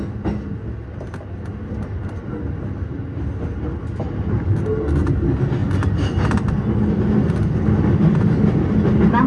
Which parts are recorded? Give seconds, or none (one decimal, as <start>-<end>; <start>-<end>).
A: 0.0-9.3